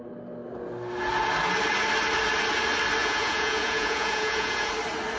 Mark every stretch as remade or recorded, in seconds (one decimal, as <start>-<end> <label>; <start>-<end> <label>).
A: 0.0-3.0 recorded; 3.0-4.7 remade; 4.7-5.2 recorded